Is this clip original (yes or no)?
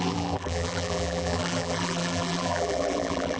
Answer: no